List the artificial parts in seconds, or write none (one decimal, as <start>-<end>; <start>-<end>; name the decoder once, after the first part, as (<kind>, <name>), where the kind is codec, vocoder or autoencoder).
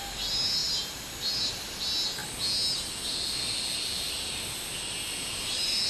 none